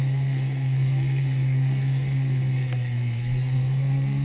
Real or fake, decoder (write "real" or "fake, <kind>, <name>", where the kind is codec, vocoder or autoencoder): fake, codec, SNAC